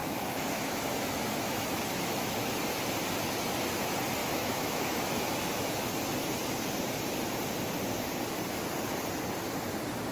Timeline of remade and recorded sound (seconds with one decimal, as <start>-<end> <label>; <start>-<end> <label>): 0.0-2.5 remade; 2.5-4.2 recorded; 4.2-5.9 remade; 5.9-10.1 recorded